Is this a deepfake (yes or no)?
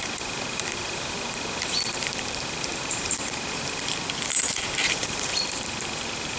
yes